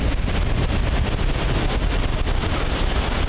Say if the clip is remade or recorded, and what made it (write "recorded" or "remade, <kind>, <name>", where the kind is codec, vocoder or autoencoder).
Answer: recorded